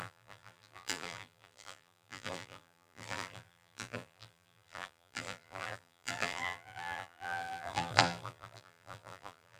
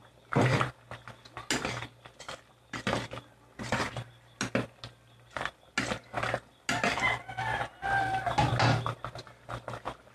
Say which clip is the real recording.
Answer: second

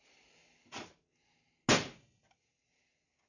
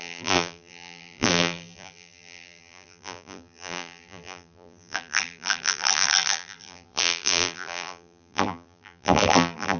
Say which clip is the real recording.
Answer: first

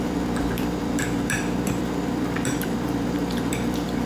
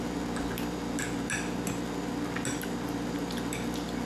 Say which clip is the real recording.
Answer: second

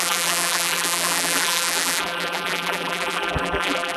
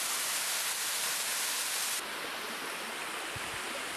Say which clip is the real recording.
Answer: second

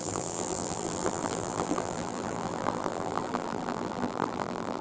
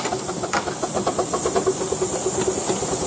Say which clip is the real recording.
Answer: second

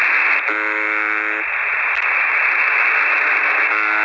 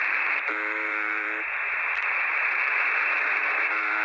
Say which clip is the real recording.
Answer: first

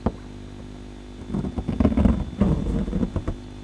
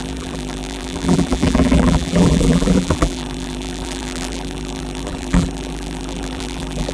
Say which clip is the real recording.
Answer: first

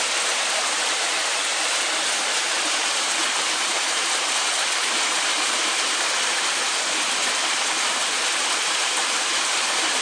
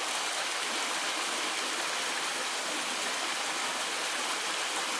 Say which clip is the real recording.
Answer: second